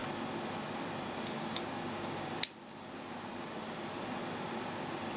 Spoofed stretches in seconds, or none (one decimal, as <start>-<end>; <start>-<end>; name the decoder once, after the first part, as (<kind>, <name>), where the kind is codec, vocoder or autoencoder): 3.1-5.2 (vocoder, BigVGAN v2)

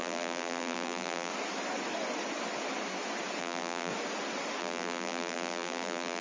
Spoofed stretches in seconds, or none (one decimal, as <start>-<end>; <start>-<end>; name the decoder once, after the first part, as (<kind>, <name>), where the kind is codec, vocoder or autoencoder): 0.0-1.3 (vocoder, BigVGAN v2); 3.4-3.9; 4.6-6.2